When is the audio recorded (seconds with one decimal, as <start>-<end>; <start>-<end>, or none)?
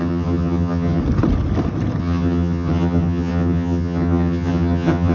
1.0-2.0